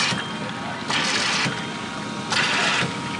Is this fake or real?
real